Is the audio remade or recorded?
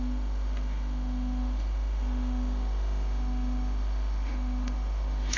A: remade